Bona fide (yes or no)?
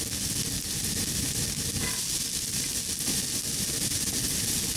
yes